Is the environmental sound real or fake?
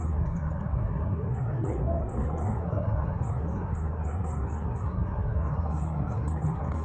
fake